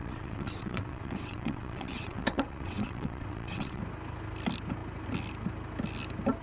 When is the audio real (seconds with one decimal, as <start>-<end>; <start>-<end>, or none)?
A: 3.8-6.4